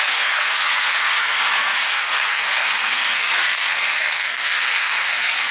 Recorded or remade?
remade